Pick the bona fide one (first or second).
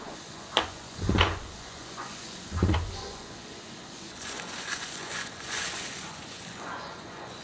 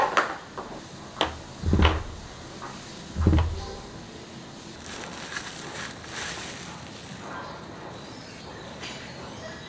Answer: second